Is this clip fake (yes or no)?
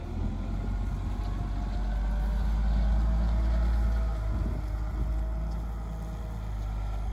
no